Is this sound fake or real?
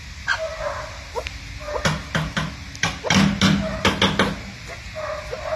real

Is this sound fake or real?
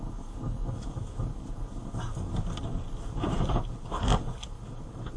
real